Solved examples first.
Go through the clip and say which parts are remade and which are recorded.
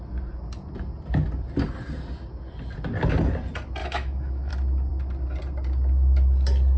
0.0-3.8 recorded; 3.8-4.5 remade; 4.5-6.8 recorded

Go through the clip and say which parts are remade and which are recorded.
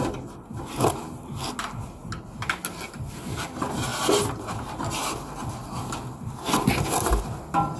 0.0-7.8 recorded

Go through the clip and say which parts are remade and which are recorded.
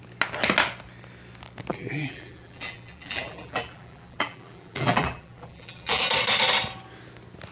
0.0-1.7 recorded; 1.7-6.0 remade; 6.0-7.5 recorded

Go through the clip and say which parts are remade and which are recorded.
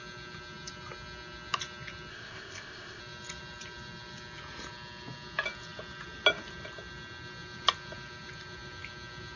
0.0-2.1 recorded; 2.1-3.0 remade; 3.0-9.4 recorded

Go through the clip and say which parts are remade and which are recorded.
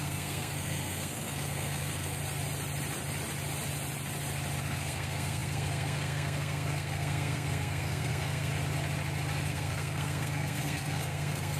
0.0-2.2 remade; 2.2-4.6 recorded; 4.6-8.5 remade; 8.5-9.5 recorded; 9.5-11.6 remade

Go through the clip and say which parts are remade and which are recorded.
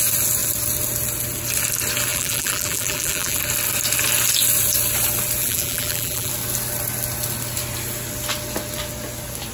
0.0-2.1 recorded; 2.1-3.4 remade; 3.4-5.4 recorded; 5.4-6.3 remade; 6.3-9.5 recorded